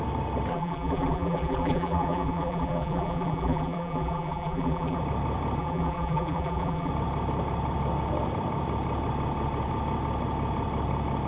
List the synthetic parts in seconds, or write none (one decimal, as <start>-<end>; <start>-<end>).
0.5-5.0; 5.6-6.9